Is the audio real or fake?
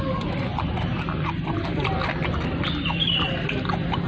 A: real